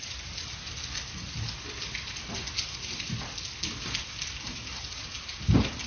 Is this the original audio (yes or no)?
yes